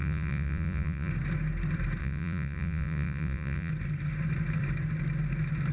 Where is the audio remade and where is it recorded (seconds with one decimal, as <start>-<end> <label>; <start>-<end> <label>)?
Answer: 0.0-1.1 remade; 1.1-2.0 recorded; 2.0-3.7 remade; 3.7-5.7 recorded